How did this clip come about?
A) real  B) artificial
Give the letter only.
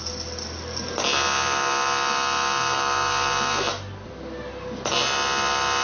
A